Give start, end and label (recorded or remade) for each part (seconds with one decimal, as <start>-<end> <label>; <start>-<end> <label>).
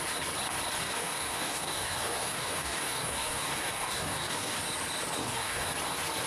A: 0.0-0.8 recorded; 0.8-4.6 remade; 4.6-5.2 recorded; 5.2-5.7 remade; 5.7-6.3 recorded